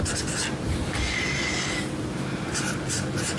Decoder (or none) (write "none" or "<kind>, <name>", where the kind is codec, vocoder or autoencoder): none